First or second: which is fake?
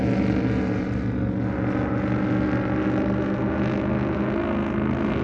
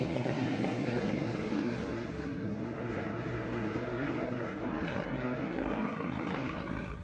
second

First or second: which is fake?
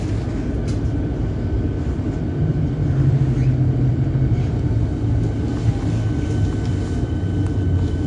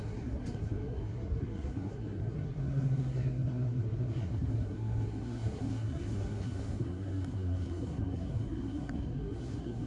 second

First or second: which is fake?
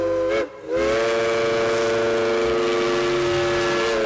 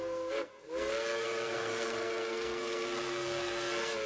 second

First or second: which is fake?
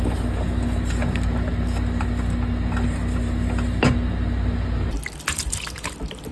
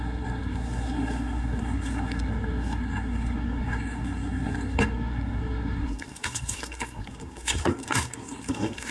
second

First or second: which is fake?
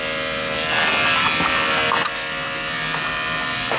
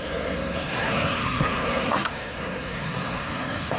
second